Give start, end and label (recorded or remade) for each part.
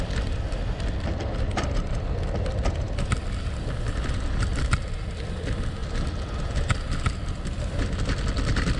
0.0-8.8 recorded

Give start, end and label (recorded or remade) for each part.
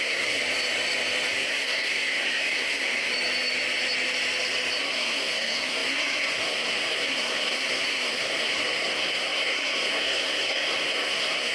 0.0-0.4 remade; 0.4-1.3 recorded; 1.3-3.1 remade; 3.1-4.8 recorded; 4.8-11.5 remade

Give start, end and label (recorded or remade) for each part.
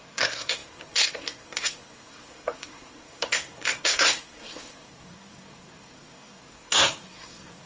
0.0-7.7 remade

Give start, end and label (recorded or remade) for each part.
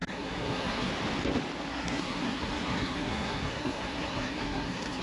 0.0-0.9 remade; 0.9-1.7 recorded; 1.7-5.0 remade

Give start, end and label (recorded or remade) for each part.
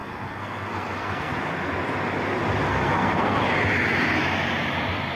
0.0-1.3 remade; 1.3-2.7 recorded; 2.7-3.4 remade; 3.4-5.2 recorded